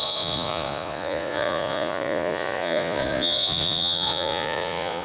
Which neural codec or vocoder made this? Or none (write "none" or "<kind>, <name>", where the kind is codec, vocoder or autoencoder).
vocoder, Vocos